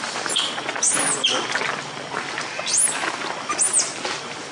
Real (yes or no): yes